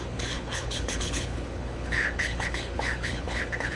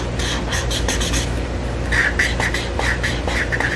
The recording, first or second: second